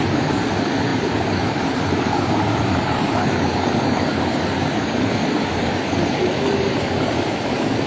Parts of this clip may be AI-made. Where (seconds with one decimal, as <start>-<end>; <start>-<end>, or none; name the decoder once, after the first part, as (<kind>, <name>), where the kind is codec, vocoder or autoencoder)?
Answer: 0.0-7.9 (codec, DAC)